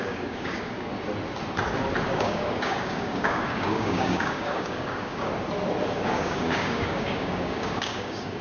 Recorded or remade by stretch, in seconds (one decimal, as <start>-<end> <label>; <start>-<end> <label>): 0.0-0.9 remade; 0.9-2.1 recorded; 2.1-5.3 remade; 5.3-5.9 recorded; 5.9-8.4 remade